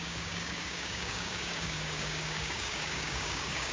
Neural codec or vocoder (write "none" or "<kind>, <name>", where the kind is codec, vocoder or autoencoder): codec, DAC